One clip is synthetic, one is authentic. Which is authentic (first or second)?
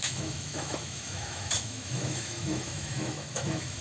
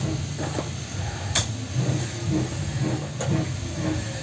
second